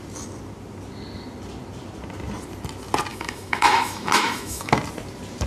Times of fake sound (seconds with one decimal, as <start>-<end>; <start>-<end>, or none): 3.1-4.7